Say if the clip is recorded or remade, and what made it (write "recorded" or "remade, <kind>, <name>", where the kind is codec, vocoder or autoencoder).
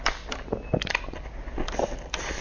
recorded